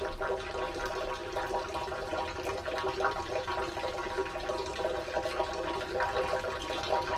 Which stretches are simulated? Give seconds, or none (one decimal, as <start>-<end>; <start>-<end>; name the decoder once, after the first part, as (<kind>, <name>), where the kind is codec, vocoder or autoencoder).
none